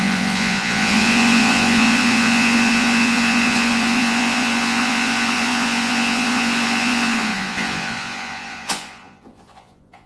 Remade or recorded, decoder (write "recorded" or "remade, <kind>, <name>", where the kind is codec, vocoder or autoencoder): remade, vocoder, Vocos